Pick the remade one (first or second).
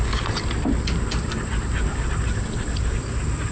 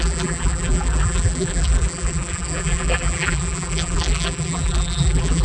second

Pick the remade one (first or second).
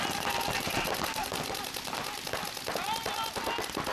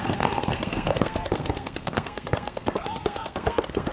second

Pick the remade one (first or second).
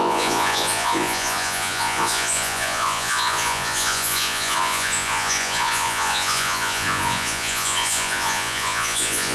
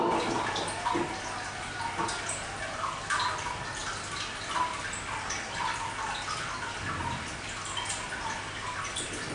first